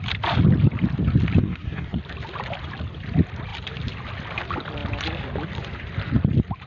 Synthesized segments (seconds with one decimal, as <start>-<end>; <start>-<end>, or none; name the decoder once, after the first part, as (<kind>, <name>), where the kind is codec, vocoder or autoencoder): 1.4-2.0 (codec, SNAC)